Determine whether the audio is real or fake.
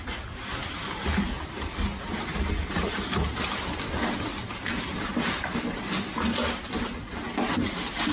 real